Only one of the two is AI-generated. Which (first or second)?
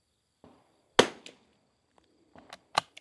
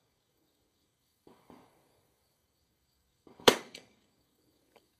second